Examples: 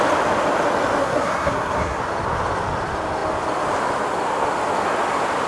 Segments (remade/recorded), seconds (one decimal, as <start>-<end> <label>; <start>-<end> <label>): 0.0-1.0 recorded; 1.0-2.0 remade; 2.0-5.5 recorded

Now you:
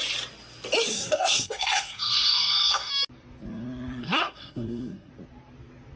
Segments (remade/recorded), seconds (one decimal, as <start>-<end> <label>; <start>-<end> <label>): 0.0-0.9 recorded; 0.9-2.9 remade; 2.9-4.0 recorded; 4.0-5.1 remade; 5.1-6.0 recorded

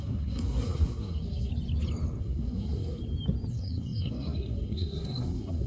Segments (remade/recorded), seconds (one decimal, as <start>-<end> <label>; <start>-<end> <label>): 0.0-1.5 remade; 1.5-2.2 recorded; 2.2-3.0 remade; 3.0-3.5 recorded; 3.5-5.7 remade